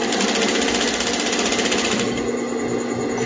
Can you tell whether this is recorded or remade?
recorded